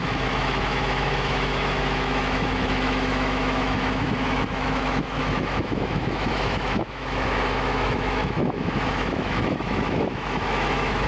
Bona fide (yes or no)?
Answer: no